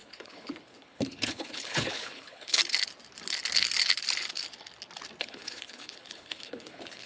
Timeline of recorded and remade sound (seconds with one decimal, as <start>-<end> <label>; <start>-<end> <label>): 0.0-2.6 remade; 2.6-5.2 recorded; 5.2-7.1 remade

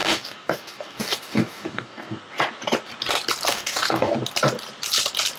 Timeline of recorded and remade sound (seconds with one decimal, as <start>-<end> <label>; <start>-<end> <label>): 0.0-2.2 remade; 2.2-3.5 recorded; 3.5-4.1 remade; 4.1-5.4 recorded